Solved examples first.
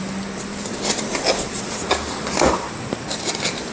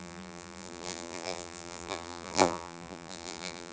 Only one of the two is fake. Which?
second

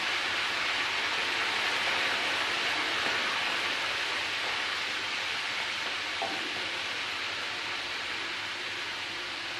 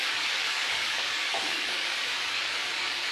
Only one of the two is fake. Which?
second